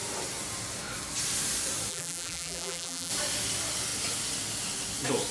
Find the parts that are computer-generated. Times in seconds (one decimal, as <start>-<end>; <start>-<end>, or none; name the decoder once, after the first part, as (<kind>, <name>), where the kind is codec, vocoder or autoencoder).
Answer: 1.9-3.1 (vocoder, BigVGAN v2)